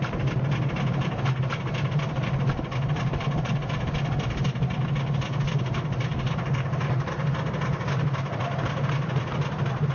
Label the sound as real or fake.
real